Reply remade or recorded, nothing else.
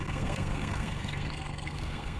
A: remade